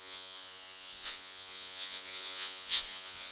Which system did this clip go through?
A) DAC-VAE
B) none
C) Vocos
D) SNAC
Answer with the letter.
C